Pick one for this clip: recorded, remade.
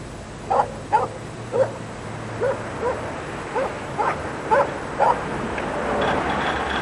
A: recorded